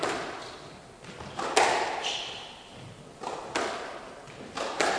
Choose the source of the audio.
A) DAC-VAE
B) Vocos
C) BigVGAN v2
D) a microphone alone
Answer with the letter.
D